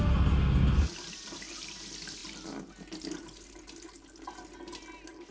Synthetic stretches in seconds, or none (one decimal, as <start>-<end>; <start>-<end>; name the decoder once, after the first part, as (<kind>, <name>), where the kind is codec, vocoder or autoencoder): none